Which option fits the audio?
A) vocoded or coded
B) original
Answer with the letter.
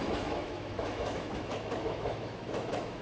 A